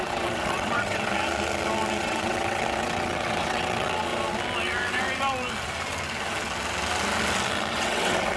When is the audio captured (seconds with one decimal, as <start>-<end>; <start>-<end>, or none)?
1.1-2.0; 4.1-7.7